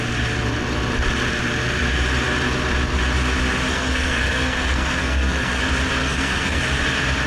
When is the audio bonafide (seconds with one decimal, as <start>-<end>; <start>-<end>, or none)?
0.0-3.7; 5.6-6.0; 6.6-7.3

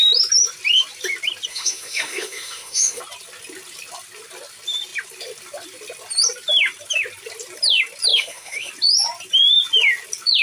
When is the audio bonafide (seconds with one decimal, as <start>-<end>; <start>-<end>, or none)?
0.0-1.5; 3.0-8.1; 8.7-10.4